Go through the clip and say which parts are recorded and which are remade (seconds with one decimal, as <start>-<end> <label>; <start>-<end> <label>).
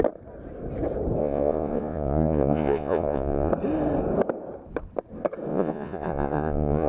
0.0-1.2 recorded; 1.2-3.5 remade; 3.5-5.5 recorded; 5.5-6.9 remade